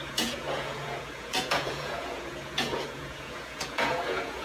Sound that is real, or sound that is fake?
fake